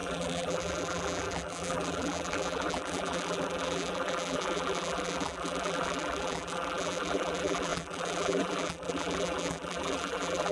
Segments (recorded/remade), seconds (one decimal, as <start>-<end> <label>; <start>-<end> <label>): 0.0-10.5 remade